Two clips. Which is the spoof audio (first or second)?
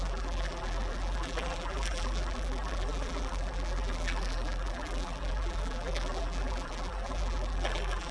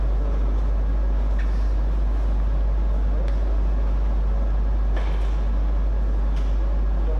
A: first